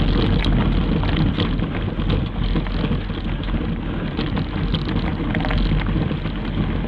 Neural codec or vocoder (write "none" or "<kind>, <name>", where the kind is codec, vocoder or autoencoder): none